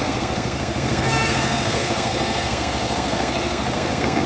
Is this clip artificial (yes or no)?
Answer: yes